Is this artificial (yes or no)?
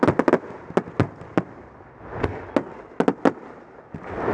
no